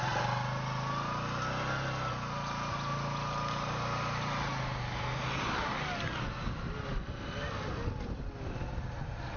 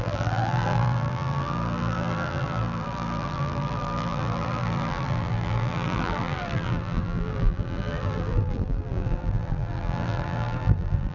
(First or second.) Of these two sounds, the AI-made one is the second